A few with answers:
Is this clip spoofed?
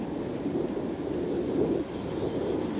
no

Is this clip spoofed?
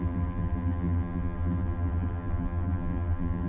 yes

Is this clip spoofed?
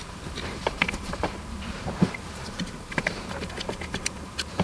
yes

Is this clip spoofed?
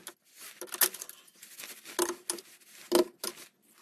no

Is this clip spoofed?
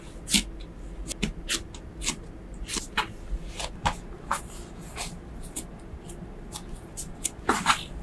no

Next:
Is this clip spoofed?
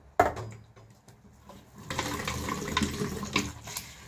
no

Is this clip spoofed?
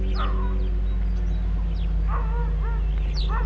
no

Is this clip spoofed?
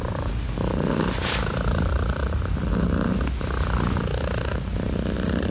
no